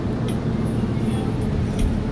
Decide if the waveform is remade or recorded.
recorded